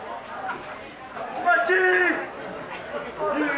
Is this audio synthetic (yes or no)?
no